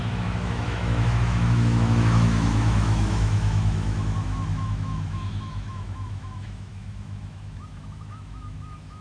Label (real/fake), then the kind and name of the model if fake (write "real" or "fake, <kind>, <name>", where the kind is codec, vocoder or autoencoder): fake, autoencoder, DAC-VAE